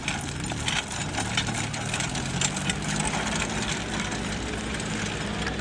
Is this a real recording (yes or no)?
yes